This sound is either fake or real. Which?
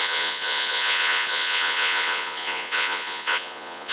fake